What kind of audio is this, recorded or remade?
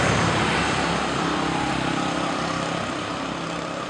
recorded